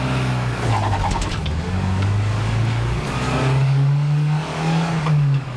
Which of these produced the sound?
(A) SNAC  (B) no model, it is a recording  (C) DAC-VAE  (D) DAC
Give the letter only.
D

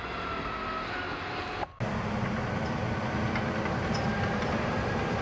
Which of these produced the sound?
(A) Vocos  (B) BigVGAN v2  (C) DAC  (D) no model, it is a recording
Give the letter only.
D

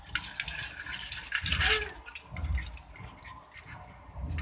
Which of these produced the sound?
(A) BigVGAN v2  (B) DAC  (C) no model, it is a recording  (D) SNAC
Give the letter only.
C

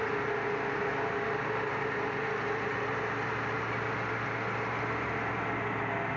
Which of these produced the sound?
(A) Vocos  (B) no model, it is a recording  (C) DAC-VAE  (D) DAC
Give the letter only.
B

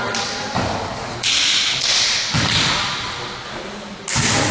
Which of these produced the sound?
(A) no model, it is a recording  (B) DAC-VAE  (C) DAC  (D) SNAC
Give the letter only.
A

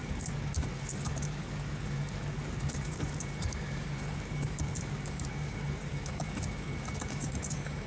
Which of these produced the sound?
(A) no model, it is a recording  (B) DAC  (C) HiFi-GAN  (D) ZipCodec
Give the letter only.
B